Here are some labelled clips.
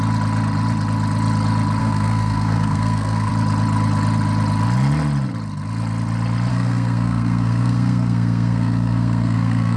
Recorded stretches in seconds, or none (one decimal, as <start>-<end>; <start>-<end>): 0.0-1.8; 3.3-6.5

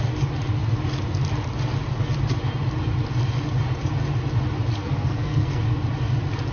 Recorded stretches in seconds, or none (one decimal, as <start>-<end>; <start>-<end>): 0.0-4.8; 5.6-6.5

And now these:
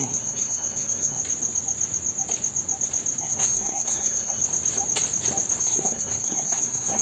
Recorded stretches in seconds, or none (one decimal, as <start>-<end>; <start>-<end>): 1.2-3.2; 4.4-5.6

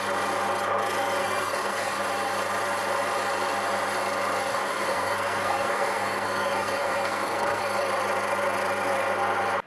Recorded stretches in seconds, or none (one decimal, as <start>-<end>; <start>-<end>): 0.0-1.2; 2.0-4.5; 7.6-9.7